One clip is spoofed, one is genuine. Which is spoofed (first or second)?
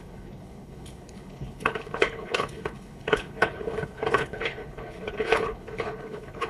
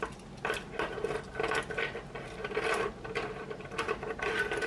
first